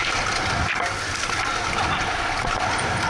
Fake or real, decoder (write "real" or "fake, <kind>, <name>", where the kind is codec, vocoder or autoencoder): real